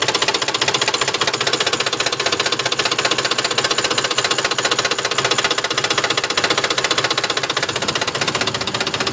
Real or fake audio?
real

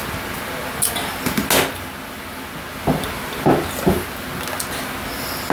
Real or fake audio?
real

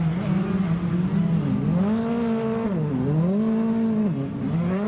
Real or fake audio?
real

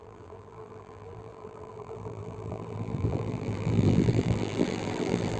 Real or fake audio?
fake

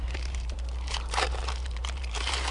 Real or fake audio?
fake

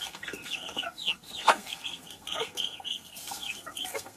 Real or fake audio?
fake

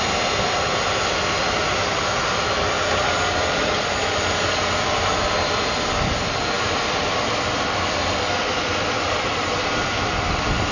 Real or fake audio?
real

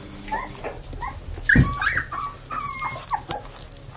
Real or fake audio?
real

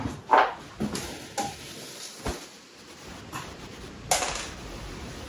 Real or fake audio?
real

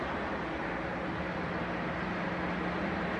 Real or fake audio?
real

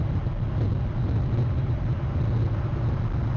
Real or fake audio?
real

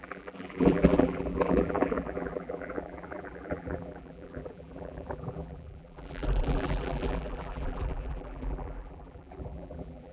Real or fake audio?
fake